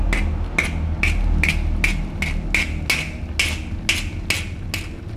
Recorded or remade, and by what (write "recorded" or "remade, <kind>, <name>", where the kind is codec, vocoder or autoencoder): recorded